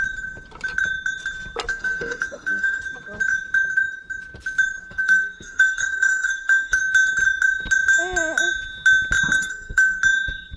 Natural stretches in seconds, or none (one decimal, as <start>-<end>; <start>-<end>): 0.0-1.7; 2.8-4.8; 6.8-9.4; 10.0-10.6